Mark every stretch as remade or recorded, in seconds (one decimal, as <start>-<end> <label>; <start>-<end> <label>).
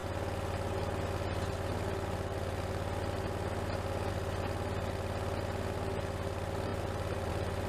0.0-7.7 recorded